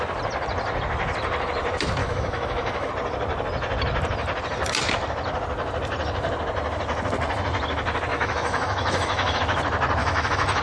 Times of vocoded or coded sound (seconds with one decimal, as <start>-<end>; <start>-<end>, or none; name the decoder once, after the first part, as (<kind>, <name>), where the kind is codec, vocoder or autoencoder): 2.0-2.9 (autoencoder, DAC-VAE); 8.1-9.4; 10.0-10.6